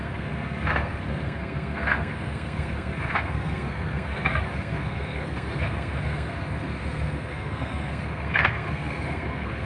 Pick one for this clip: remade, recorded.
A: remade